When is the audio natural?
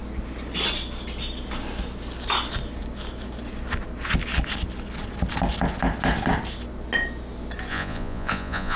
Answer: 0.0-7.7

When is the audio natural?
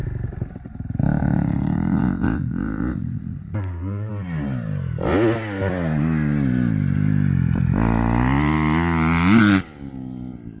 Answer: 0.0-1.2; 4.1-10.6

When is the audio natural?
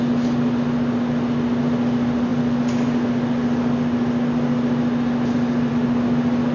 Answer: 0.0-6.5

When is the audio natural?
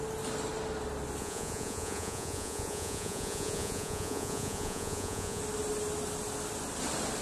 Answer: 0.0-1.2; 5.4-7.2